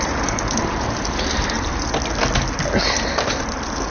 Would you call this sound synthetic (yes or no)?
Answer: no